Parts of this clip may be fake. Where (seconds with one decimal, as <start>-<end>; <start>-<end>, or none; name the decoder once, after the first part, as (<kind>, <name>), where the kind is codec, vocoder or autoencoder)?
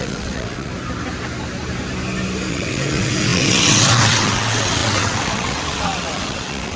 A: 0.0-0.7 (vocoder, WaveNeXt); 2.5-6.8